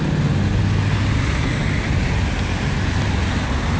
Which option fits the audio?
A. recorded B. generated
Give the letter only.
A